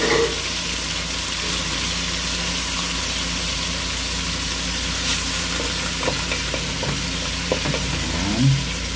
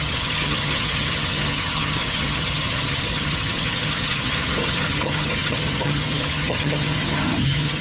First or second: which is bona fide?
first